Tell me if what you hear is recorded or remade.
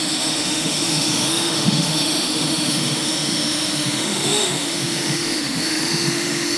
remade